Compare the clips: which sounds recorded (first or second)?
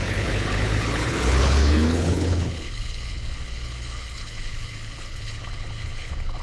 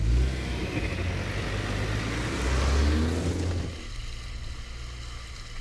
second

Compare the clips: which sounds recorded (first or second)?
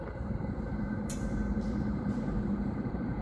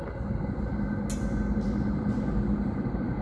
second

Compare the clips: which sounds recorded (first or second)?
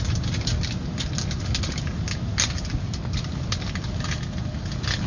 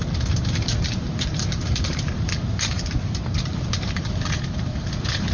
first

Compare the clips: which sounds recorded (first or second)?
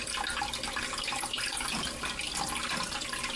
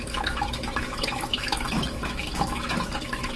first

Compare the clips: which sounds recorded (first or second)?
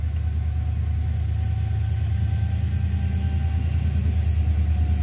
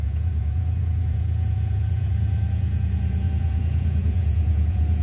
first